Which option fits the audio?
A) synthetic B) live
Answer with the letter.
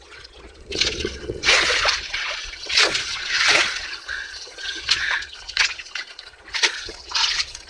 A